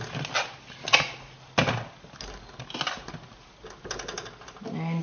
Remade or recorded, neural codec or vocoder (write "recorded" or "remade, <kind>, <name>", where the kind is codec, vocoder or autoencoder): recorded